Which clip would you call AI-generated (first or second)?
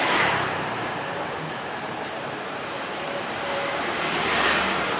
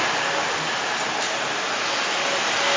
first